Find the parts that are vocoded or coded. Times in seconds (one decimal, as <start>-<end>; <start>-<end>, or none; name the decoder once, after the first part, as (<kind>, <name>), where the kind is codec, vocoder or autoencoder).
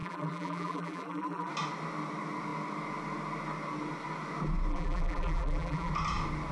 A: 0.0-1.5 (vocoder, BigVGAN v2); 4.7-5.9